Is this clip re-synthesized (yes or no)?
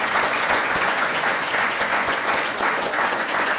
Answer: yes